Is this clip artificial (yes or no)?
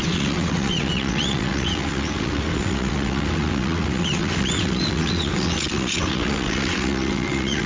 yes